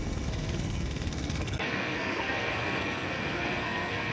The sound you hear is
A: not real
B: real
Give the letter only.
A